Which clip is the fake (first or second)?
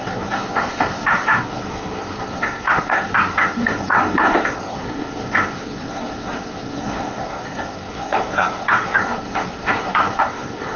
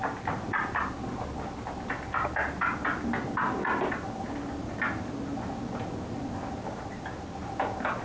first